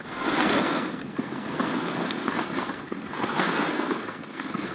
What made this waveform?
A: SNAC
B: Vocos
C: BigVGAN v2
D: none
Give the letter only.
A